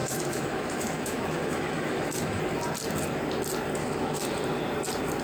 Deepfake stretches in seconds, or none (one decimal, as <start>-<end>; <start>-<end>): 0.0-2.4; 3.8-4.3